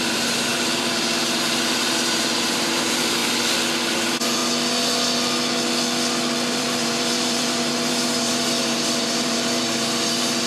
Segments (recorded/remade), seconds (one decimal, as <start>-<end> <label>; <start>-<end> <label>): 0.0-3.2 remade; 3.2-3.9 recorded; 3.9-4.4 remade; 4.4-6.6 recorded; 6.6-10.5 remade

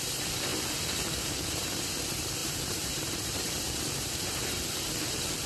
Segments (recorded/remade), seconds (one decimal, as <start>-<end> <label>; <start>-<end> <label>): 0.0-0.5 recorded; 0.5-1.8 remade; 1.8-2.4 recorded; 2.4-5.1 remade; 5.1-5.5 recorded

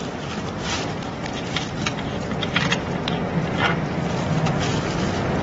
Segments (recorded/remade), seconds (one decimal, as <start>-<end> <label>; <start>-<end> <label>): 0.0-1.9 remade; 1.9-5.4 recorded